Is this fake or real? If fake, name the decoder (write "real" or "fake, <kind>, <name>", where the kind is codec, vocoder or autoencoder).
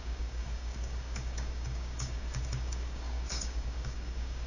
fake, codec, DAC